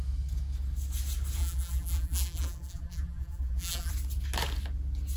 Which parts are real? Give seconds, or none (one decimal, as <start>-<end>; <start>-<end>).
0.0-1.4; 3.9-5.2